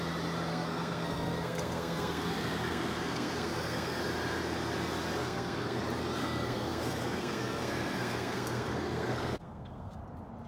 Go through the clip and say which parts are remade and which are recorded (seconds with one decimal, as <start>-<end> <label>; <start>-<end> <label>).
0.0-0.5 recorded; 0.5-4.0 remade; 4.0-5.2 recorded; 5.2-5.8 remade; 5.8-6.2 recorded; 6.2-10.0 remade; 10.0-10.5 recorded